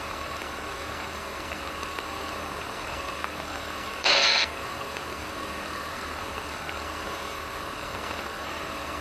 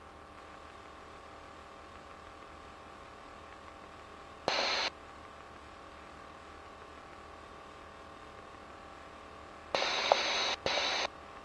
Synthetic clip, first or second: first